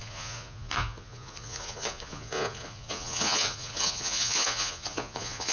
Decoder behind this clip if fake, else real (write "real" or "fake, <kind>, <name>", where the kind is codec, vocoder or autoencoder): fake, vocoder, Vocos